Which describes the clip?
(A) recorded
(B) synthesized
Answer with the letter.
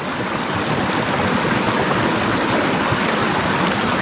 A